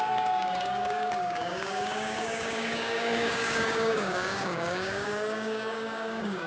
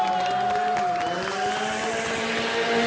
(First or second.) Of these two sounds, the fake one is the first